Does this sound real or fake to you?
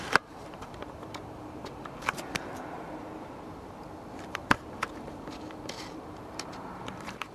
fake